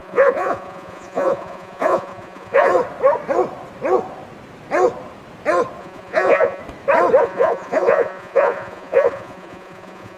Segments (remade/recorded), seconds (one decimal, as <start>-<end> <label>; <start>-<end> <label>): 0.0-2.7 remade; 2.7-5.8 recorded; 5.8-6.6 remade; 6.6-7.2 recorded; 7.2-10.2 remade